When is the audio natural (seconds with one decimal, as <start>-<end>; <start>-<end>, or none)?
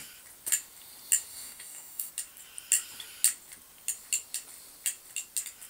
0.0-1.3; 2.1-5.7